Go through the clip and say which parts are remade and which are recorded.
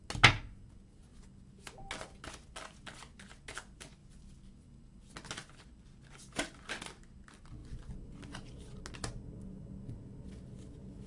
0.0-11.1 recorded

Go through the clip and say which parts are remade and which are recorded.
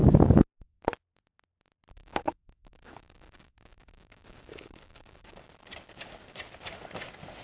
0.0-0.8 remade; 0.8-1.9 recorded; 1.9-5.4 remade; 5.4-7.4 recorded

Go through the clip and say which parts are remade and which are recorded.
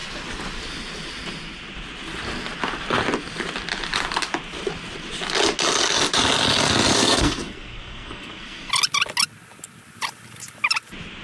0.0-6.9 recorded; 6.9-8.7 remade; 8.7-11.2 recorded